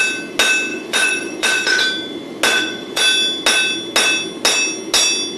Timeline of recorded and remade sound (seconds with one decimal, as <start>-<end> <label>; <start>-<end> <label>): 0.0-0.7 recorded; 0.7-1.8 remade; 1.8-2.5 recorded; 2.5-3.0 remade; 3.0-5.4 recorded